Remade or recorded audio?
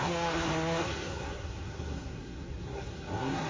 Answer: remade